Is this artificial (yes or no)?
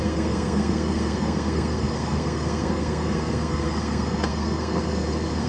yes